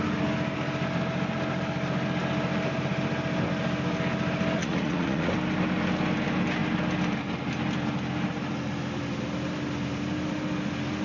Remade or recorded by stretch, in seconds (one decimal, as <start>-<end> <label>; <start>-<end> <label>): 0.0-4.6 recorded; 4.6-5.3 remade; 5.3-11.0 recorded